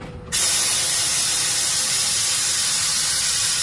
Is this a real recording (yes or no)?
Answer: yes